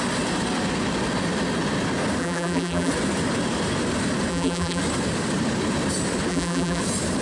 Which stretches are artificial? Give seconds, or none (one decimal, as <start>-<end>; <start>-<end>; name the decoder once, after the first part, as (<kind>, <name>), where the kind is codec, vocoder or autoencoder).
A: 2.2-2.9 (vocoder, BigVGAN v2); 4.3-4.8; 6.3-6.8